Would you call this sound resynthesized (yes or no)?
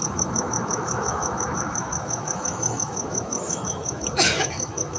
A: yes